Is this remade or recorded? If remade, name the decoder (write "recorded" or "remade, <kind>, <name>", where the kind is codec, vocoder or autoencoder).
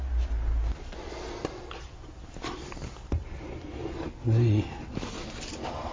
recorded